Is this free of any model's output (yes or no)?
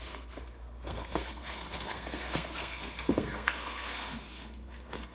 no